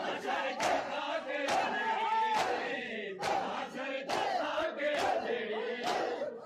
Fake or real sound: real